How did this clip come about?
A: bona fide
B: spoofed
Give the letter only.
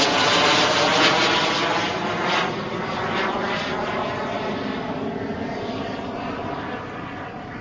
A